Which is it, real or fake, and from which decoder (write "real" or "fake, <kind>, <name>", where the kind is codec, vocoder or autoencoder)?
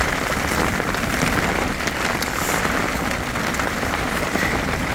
real